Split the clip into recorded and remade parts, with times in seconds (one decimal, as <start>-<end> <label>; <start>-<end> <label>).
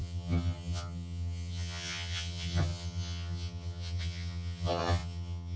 0.0-5.6 remade